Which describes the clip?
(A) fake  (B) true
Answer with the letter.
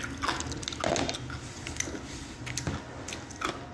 B